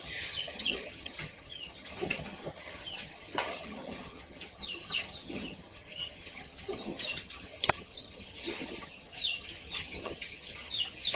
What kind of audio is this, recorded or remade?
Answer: remade